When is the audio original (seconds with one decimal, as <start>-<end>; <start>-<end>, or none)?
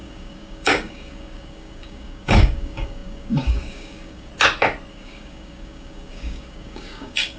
4.3-4.9